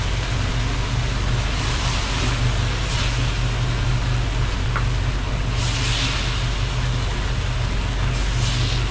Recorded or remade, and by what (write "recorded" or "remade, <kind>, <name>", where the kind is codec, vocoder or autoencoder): recorded